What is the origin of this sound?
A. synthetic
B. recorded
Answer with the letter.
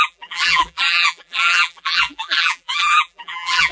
A